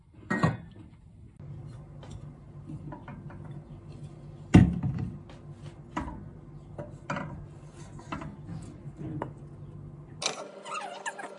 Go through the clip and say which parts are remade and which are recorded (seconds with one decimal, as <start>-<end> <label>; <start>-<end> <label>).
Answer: 0.0-11.4 recorded